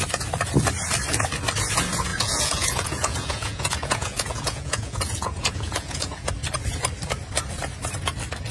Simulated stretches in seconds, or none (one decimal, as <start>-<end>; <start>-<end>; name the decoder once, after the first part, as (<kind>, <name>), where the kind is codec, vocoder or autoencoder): 2.1-6.3 (vocoder, Vocos)